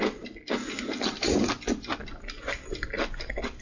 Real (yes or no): yes